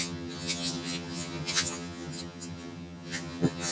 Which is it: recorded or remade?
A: remade